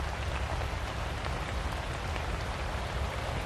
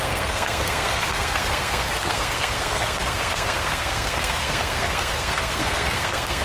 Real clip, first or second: first